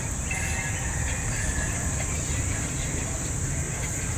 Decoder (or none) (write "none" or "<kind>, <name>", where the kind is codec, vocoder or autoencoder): none